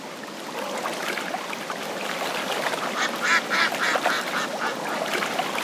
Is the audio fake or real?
real